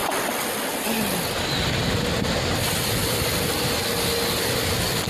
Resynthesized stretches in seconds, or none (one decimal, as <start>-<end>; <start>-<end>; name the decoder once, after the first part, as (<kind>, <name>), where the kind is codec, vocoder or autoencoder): none